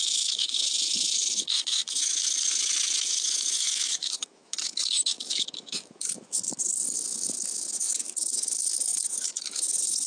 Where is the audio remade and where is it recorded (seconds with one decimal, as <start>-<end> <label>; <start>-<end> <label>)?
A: 0.0-10.1 remade